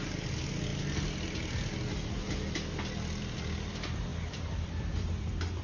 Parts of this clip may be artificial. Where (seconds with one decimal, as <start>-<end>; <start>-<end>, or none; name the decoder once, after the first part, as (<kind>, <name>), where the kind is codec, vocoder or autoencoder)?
4.1-5.6 (vocoder, BigVGAN v2)